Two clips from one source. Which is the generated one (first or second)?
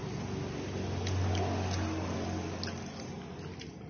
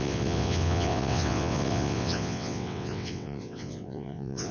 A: second